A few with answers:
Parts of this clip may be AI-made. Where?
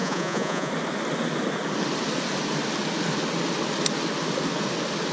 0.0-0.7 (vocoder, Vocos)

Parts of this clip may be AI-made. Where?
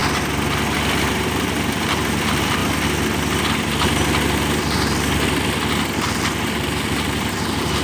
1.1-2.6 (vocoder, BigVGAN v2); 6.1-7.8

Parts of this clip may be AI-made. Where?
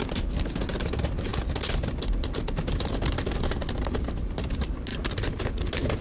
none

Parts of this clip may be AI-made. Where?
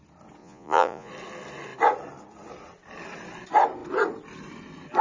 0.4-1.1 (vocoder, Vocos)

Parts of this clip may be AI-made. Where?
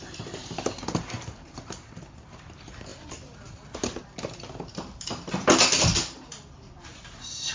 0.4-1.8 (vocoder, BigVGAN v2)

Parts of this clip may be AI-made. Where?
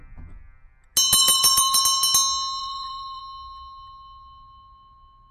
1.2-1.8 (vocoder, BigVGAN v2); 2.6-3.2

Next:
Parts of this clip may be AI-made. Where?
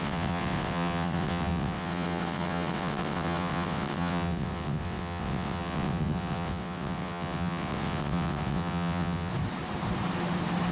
0.0-9.3 (vocoder, WaveNeXt)